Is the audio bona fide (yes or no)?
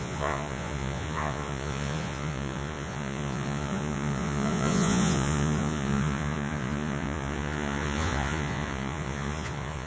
no